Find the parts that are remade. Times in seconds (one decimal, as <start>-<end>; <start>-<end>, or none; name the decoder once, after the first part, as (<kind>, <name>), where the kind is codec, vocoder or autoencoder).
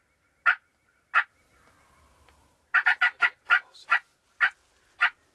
none